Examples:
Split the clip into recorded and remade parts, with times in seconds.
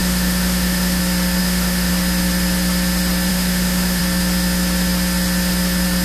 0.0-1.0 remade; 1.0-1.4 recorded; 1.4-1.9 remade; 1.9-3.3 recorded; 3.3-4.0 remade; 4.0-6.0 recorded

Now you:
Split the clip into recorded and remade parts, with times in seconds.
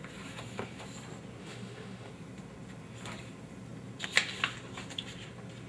0.0-1.4 recorded; 1.4-2.1 remade; 2.1-5.7 recorded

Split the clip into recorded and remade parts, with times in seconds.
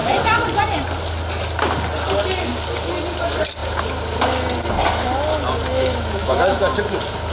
0.0-5.7 recorded; 5.7-6.6 remade; 6.6-7.3 recorded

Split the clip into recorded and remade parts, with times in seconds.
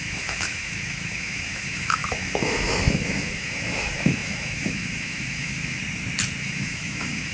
0.0-5.8 remade; 5.8-6.4 recorded; 6.4-7.3 remade